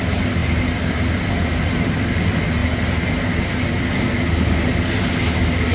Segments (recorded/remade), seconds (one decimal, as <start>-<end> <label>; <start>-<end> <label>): 0.0-5.7 recorded